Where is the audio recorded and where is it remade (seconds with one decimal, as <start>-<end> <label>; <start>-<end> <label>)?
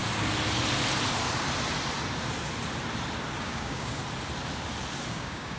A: 0.0-3.4 recorded; 3.4-4.0 remade; 4.0-5.1 recorded; 5.1-5.6 remade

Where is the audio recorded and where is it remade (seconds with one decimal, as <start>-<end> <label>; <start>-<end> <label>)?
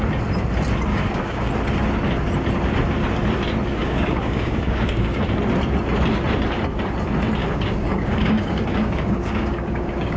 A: 0.0-0.9 recorded; 0.9-1.5 remade; 1.5-3.8 recorded; 3.8-5.2 remade; 5.2-7.4 recorded; 7.4-10.2 remade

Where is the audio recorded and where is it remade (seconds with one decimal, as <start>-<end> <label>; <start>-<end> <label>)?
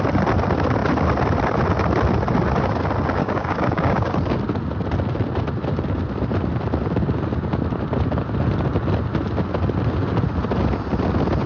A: 0.0-3.2 recorded; 3.2-4.1 remade; 4.1-11.5 recorded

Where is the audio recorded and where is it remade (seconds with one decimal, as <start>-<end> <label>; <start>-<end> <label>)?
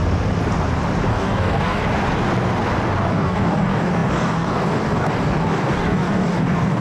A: 0.0-1.1 recorded; 1.1-1.8 remade; 1.8-3.1 recorded; 3.1-6.8 remade